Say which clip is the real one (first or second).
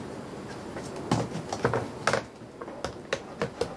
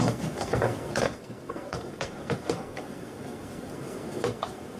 first